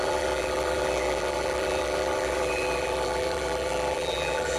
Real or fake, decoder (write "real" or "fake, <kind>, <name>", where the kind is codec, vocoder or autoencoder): fake, vocoder, BigVGAN v2